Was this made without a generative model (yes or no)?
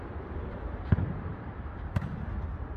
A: no